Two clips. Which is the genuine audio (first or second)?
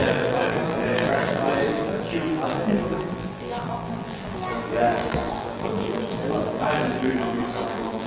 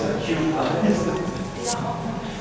second